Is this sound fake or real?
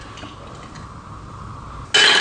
real